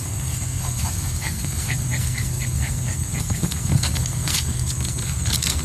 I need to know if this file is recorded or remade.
remade